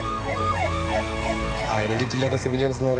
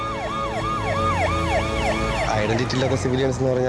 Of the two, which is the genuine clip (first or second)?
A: second